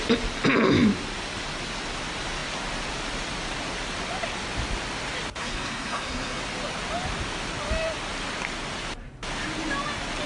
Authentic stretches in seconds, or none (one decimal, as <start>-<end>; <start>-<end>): 0.0-5.4; 6.4-10.3

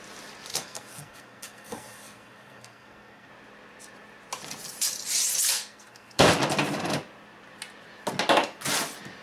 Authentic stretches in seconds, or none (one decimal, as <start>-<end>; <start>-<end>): 0.0-0.5; 3.3-5.5; 6.3-9.2

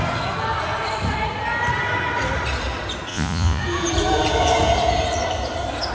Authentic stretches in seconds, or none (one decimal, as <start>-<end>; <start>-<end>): 0.0-3.1; 3.6-5.9

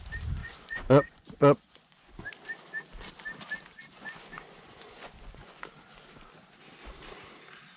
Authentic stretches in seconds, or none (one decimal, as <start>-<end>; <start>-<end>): 0.0-0.4; 2.1-3.9; 5.6-7.8

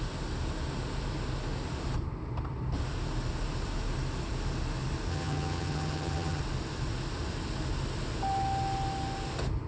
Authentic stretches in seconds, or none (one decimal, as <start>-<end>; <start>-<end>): 0.0-5.1; 6.4-9.7

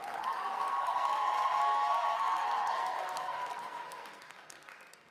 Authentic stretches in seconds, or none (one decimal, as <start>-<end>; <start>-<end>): none